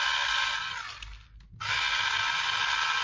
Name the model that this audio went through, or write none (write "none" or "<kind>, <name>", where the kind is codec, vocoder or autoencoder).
none